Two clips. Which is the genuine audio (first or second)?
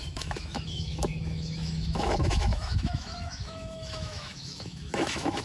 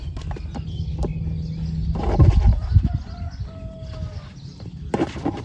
second